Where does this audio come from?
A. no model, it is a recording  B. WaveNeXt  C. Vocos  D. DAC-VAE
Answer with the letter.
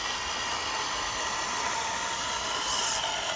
A